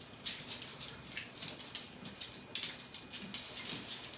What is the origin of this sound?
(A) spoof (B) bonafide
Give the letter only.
B